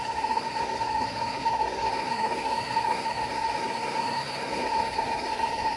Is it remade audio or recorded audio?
remade